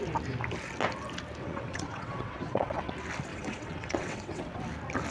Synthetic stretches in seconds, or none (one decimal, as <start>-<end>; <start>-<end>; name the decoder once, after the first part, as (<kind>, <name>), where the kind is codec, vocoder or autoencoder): 1.4-2.9 (vocoder, WaveNeXt); 3.3-4.6